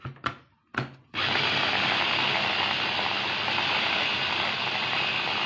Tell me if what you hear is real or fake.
real